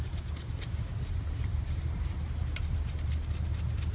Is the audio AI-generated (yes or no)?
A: no